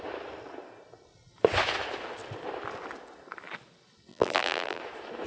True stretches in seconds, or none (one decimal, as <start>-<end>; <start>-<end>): 0.0-4.1; 4.8-5.3